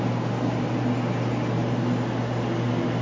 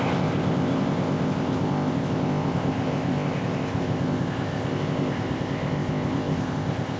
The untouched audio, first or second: first